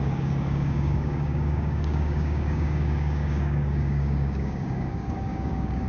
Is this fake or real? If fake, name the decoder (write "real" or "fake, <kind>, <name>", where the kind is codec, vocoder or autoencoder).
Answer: fake, codec, DAC